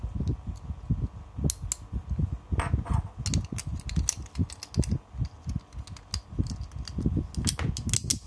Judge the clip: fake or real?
real